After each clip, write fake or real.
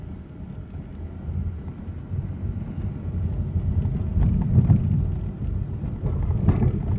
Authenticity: real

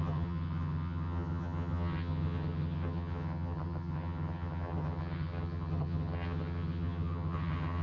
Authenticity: fake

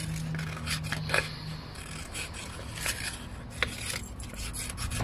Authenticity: real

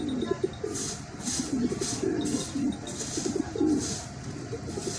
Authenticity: real